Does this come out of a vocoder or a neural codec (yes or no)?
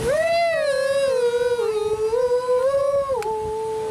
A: no